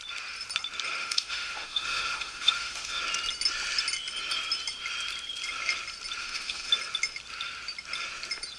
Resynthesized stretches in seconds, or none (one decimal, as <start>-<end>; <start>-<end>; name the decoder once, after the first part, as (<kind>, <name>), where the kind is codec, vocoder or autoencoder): 1.0-3.0 (autoencoder, DAC-VAE); 6.2-6.7